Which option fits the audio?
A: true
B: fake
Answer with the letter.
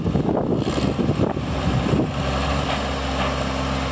A